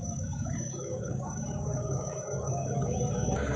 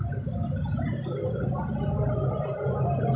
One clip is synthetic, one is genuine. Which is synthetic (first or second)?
first